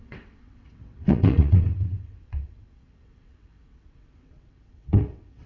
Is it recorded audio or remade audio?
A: remade